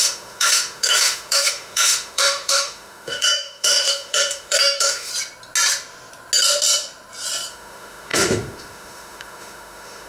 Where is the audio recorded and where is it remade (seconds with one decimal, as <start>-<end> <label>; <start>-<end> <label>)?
0.0-5.1 remade; 5.1-7.5 recorded; 7.5-10.1 remade